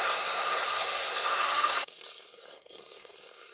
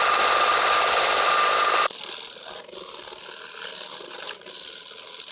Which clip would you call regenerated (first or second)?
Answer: first